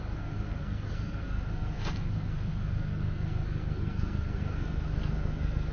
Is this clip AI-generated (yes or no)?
yes